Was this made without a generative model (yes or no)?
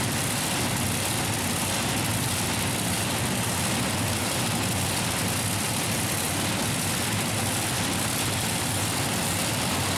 yes